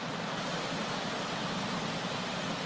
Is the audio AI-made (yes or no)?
no